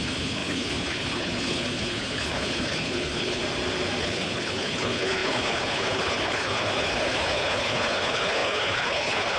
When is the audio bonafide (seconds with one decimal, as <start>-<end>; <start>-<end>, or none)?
3.4-4.0